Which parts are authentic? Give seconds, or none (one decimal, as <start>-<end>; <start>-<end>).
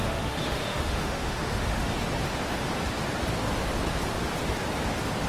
2.0-5.3